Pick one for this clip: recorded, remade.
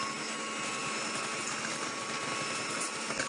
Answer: recorded